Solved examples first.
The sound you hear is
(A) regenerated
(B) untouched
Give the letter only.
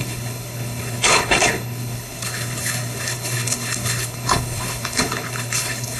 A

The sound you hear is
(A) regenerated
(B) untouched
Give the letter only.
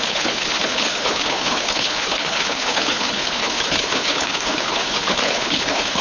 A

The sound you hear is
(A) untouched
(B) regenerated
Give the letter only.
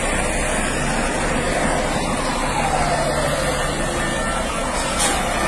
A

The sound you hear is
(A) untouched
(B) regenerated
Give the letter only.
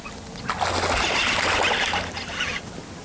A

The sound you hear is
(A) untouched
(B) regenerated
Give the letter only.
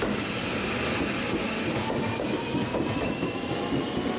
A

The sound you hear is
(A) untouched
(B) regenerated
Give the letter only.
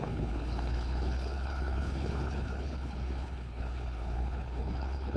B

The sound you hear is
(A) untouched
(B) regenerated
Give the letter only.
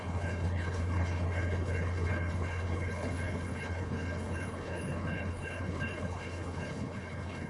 B